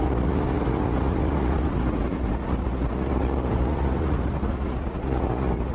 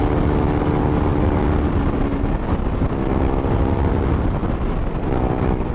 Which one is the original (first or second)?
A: second